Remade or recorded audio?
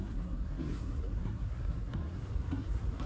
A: remade